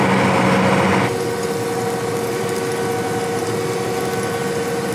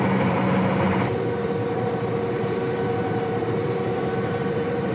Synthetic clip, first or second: second